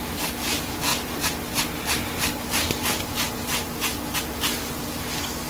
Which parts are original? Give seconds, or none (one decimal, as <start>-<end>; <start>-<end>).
0.0-5.5

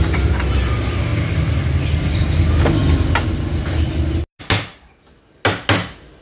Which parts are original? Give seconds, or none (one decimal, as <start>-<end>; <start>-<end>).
0.0-6.2

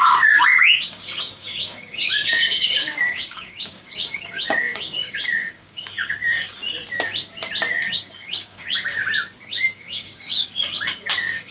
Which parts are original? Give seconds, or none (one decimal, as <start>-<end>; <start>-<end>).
6.6-7.7; 9.0-9.5